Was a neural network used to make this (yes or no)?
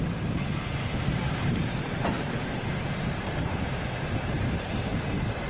no